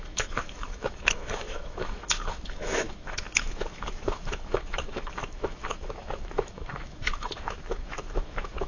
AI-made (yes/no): yes